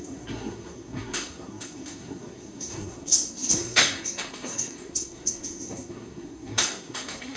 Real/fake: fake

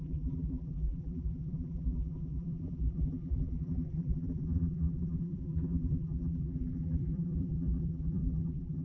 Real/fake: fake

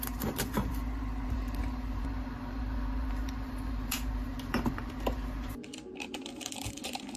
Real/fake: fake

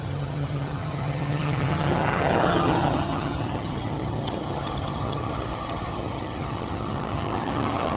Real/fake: fake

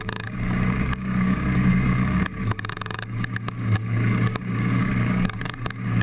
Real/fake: fake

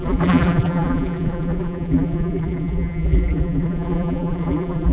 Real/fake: fake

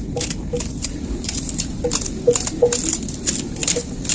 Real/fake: real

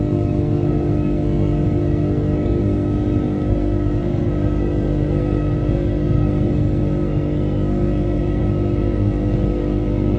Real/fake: fake